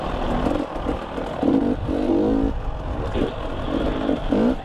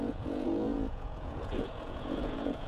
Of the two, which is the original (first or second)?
first